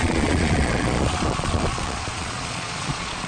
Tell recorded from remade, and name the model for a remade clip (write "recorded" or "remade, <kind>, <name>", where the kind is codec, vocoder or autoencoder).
remade, vocoder, Vocos